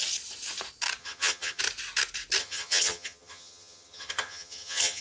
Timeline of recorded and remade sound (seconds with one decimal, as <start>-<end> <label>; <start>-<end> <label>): 0.0-1.0 recorded; 1.0-1.6 remade; 1.6-2.4 recorded; 2.4-5.0 remade